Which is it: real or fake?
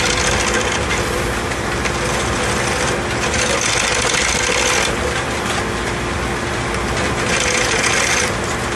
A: real